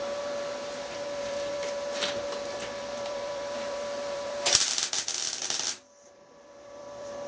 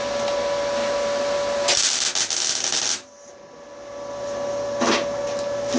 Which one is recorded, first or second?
second